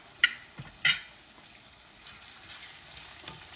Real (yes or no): yes